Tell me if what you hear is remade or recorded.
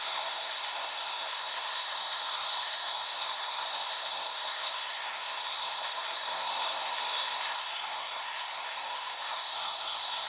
remade